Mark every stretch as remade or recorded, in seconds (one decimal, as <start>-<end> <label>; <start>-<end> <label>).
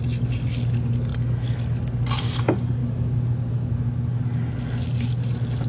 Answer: 0.0-5.7 recorded